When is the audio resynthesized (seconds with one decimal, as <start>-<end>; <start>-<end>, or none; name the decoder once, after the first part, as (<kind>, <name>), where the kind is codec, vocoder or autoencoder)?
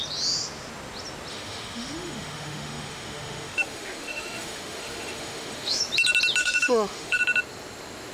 1.3-5.8 (autoencoder, DAC-VAE); 6.4-7.2